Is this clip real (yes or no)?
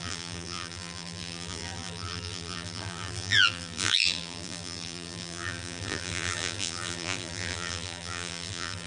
no